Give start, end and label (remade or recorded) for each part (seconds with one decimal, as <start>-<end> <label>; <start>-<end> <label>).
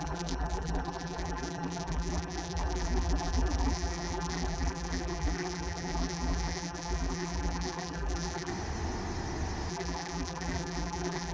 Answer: 0.0-8.5 remade; 8.5-9.7 recorded; 9.7-11.3 remade